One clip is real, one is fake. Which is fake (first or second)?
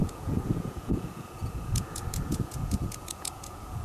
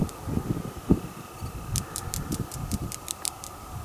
first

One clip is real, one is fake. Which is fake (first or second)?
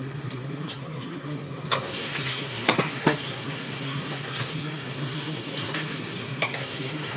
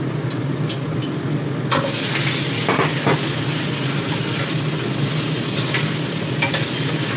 first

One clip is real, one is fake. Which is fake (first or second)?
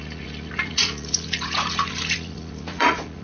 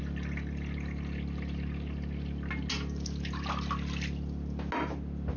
first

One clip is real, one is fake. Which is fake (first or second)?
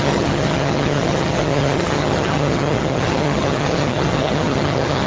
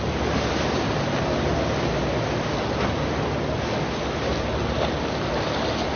first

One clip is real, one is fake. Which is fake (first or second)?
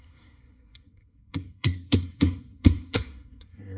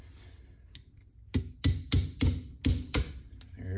first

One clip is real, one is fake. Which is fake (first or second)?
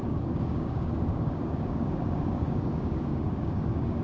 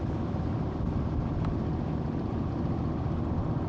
first